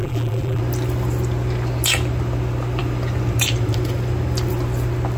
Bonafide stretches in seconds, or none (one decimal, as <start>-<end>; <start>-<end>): 0.6-5.2